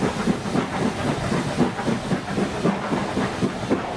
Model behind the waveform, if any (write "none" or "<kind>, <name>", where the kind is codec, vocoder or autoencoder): none